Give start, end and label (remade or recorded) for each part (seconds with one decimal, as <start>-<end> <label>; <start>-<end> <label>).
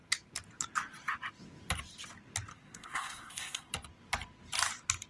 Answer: 0.0-2.5 recorded; 2.5-3.7 remade; 3.7-5.1 recorded